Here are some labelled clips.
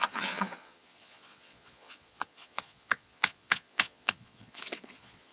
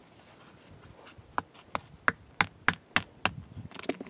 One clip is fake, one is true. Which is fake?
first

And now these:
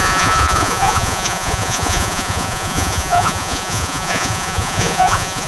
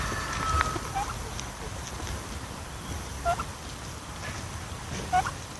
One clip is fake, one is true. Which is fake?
first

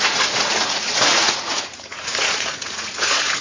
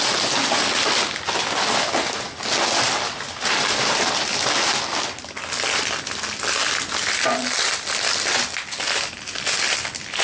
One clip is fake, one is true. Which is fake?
first